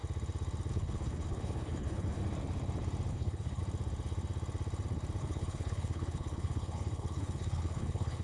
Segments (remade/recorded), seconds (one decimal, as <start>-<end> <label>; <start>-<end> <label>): 0.0-0.7 recorded; 0.7-2.2 remade; 2.2-3.1 recorded; 3.1-3.6 remade; 3.6-5.2 recorded; 5.2-8.2 remade